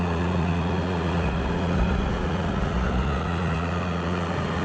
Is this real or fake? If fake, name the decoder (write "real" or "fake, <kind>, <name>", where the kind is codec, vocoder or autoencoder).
fake, vocoder, Vocos